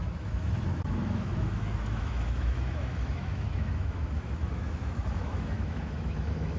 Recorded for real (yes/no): no